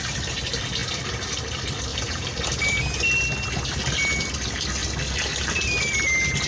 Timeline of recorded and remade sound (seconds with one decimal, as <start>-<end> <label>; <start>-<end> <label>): 0.0-0.8 recorded; 0.8-1.4 remade; 1.4-1.9 recorded; 1.9-2.8 remade; 2.8-4.8 recorded; 4.8-5.4 remade; 5.4-6.5 recorded